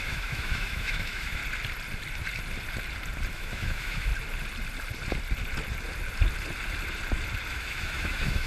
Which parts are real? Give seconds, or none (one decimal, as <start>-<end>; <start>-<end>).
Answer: 1.4-3.3; 4.1-7.5